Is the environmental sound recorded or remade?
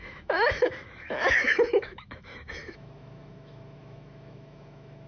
remade